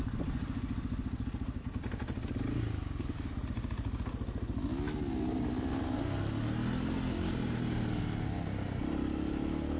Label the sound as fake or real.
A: real